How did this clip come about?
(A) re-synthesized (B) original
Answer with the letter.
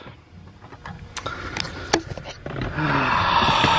B